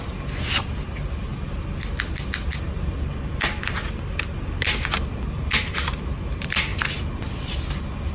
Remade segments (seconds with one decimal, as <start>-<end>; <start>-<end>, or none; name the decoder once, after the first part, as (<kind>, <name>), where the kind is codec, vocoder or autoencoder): none